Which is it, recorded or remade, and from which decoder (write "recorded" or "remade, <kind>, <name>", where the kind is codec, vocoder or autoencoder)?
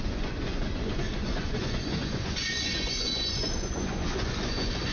remade, vocoder, Vocos